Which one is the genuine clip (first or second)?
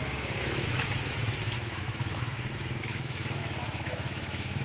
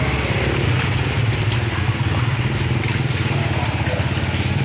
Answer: second